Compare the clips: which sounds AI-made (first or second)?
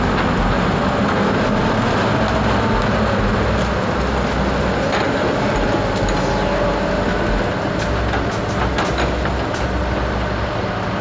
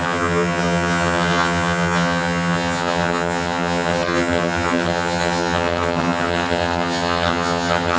second